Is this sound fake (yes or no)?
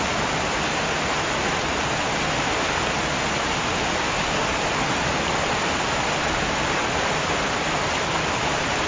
no